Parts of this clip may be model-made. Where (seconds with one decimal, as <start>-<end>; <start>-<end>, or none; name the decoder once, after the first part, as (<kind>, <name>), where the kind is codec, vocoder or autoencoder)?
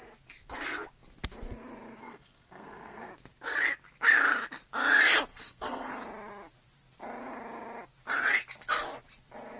2.0-3.1 (codec, SNAC); 5.3-5.9